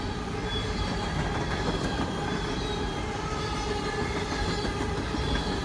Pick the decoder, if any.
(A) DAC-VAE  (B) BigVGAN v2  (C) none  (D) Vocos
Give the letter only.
C